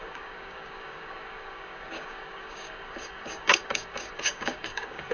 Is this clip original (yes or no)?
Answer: no